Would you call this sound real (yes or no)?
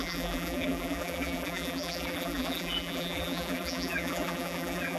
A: no